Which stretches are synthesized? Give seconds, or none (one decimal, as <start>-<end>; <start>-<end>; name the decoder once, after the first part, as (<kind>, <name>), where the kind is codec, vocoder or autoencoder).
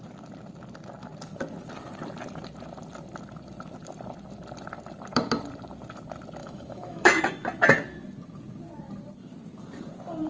6.4-7.2 (autoencoder, DAC-VAE)